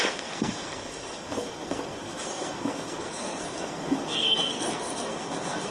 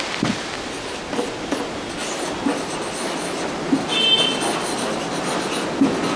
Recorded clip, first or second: second